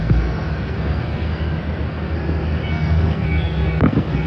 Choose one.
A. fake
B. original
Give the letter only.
A